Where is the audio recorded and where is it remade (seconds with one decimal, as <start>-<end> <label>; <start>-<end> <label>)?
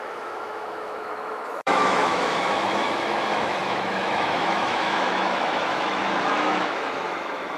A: 0.0-7.6 remade